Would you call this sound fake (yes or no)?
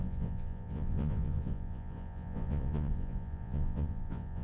yes